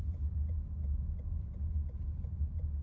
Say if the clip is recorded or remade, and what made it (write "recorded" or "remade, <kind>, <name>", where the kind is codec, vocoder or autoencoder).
recorded